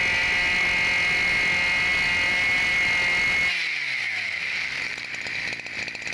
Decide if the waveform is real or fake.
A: real